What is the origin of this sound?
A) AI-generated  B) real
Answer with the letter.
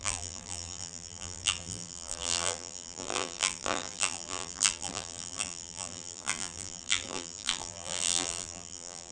A